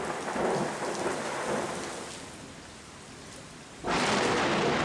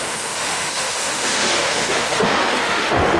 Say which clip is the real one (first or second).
first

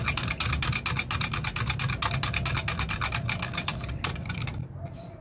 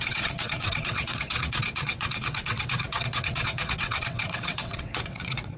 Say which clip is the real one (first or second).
first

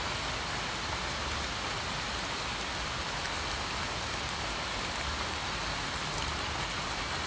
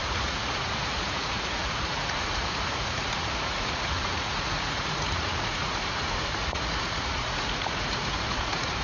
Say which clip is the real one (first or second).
first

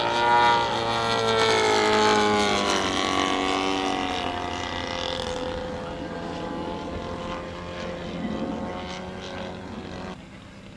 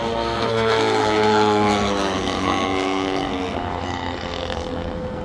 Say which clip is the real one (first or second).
first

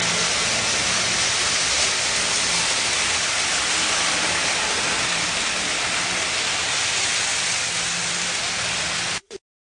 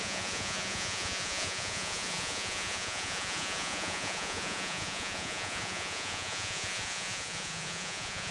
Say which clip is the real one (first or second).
first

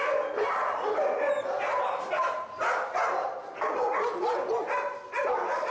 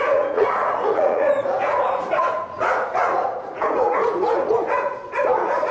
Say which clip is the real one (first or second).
first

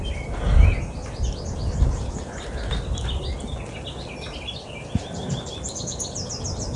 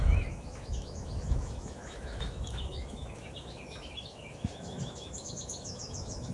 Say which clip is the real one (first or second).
first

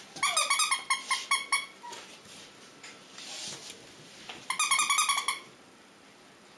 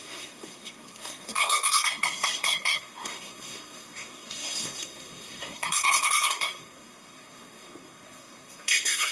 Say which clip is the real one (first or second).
first